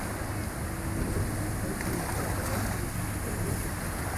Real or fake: real